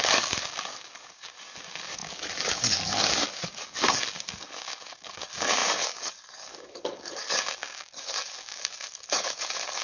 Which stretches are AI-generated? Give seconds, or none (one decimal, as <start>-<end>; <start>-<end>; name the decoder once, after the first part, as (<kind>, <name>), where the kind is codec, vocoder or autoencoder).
0.0-9.8 (codec, DAC)